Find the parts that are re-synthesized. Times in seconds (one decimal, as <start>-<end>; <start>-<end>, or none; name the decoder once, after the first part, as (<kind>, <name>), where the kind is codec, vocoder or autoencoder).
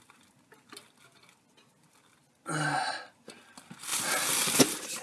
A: none